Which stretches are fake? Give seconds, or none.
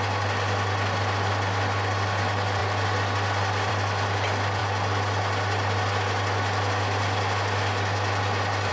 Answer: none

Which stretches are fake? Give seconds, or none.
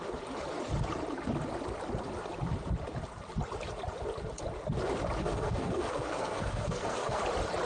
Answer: 5.2-7.2 (codec, SNAC)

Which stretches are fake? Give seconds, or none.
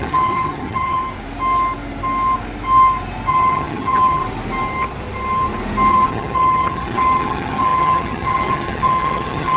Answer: 0.0-1.0 (vocoder, HiFi-GAN); 3.3-4.2; 5.9-9.6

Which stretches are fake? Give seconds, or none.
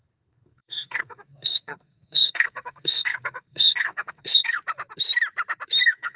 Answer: 0.0-4.6 (codec, SNAC); 5.8-6.2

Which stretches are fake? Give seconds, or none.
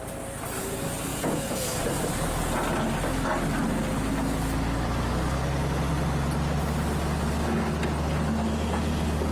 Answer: 1.1-1.8 (vocoder, Vocos)